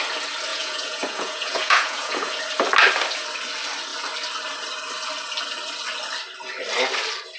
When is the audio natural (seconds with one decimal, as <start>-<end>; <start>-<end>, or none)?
0.0-0.5; 2.3-7.4